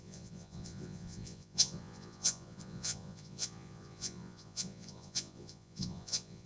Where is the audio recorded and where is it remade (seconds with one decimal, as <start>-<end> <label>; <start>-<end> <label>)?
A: 0.0-6.5 remade